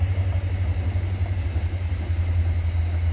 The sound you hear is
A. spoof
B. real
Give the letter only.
B